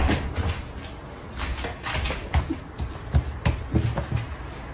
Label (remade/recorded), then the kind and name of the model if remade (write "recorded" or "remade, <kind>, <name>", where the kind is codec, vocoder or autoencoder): recorded